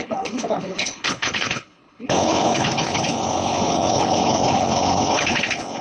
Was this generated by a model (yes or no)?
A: yes